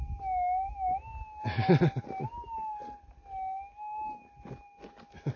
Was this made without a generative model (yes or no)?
yes